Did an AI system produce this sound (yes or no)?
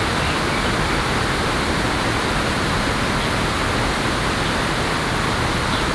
no